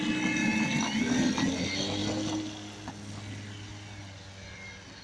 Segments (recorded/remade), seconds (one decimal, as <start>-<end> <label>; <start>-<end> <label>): 0.0-0.4 recorded; 0.4-1.0 remade; 1.0-5.0 recorded